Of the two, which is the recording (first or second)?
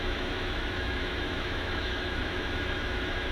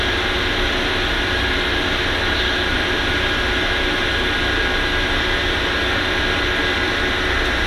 second